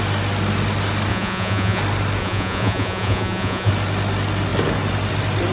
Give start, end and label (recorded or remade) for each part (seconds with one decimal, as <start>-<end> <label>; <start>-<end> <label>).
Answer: 0.0-1.1 recorded; 1.1-1.8 remade; 1.8-2.2 recorded; 2.2-3.7 remade; 3.7-5.5 recorded